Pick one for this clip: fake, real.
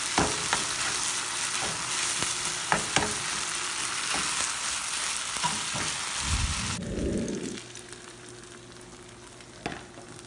real